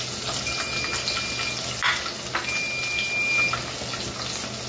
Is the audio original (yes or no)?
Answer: yes